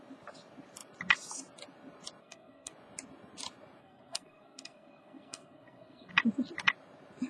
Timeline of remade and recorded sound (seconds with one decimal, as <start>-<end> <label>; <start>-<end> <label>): 0.0-2.2 recorded; 2.2-2.7 remade; 2.7-3.8 recorded; 3.8-6.1 remade; 6.1-7.3 recorded